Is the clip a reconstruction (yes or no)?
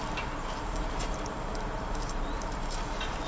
yes